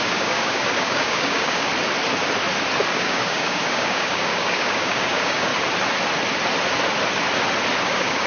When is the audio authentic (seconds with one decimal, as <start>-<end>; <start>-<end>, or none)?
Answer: 1.7-2.9; 5.5-7.8